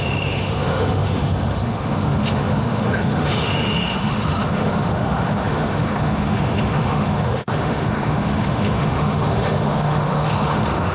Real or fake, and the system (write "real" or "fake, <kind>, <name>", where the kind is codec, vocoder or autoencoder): fake, autoencoder, DAC-VAE